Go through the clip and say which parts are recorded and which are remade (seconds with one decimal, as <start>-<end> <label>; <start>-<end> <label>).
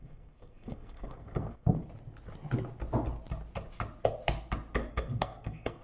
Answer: 0.0-1.8 remade; 1.8-4.9 recorded; 4.9-5.8 remade